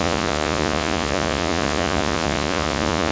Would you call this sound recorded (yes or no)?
no